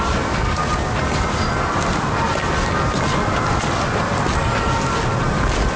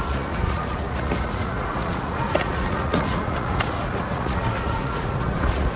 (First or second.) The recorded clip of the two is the first